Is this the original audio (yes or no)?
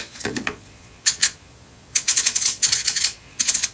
no